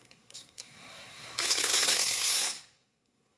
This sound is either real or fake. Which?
fake